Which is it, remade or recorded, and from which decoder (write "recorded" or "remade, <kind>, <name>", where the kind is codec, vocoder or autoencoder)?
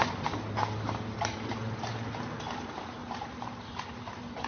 recorded